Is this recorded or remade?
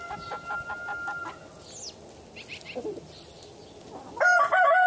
recorded